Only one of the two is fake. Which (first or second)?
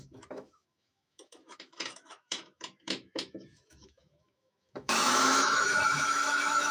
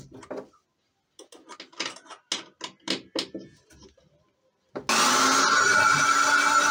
first